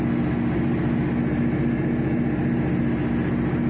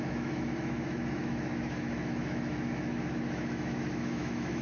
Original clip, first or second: first